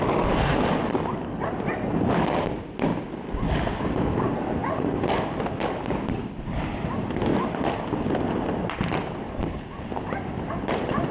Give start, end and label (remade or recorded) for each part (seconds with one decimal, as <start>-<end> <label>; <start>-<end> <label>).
0.0-11.1 recorded